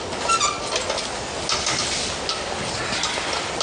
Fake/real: real